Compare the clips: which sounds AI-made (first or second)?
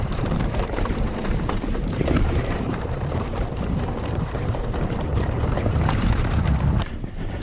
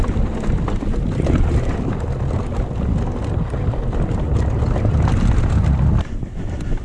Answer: first